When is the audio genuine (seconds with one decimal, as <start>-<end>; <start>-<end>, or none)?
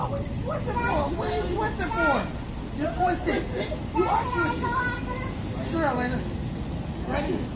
0.0-7.6